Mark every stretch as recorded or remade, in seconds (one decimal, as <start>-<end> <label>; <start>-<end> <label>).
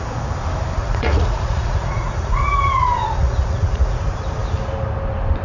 0.0-0.8 recorded; 0.8-4.0 remade; 4.0-5.4 recorded